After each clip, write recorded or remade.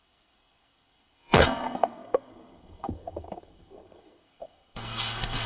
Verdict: remade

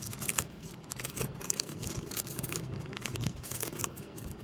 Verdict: remade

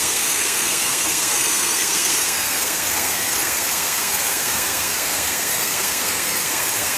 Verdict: remade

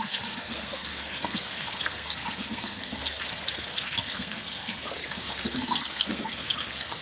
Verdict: remade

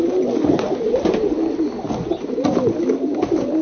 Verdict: recorded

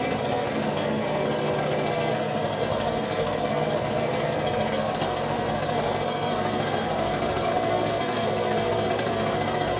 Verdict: remade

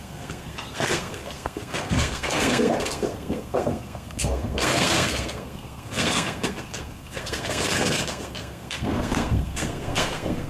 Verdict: remade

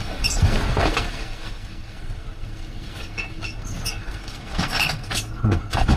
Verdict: remade